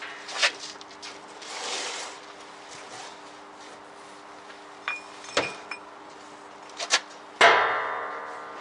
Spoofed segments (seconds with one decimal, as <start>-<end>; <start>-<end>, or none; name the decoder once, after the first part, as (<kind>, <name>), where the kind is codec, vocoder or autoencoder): 0.4-2.2 (vocoder, BigVGAN v2)